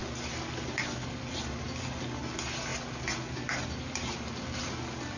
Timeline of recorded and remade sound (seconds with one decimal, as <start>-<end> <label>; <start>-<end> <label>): 0.0-5.2 recorded